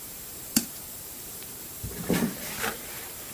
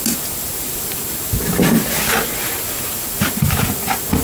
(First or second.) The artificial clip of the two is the first